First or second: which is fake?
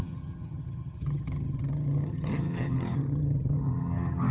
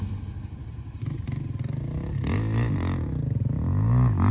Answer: first